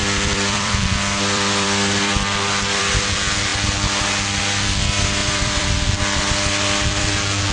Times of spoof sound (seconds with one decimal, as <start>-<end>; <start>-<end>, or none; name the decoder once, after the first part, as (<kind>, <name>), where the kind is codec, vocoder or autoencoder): 0.0-3.0 (vocoder, BigVGAN v2); 5.2-7.1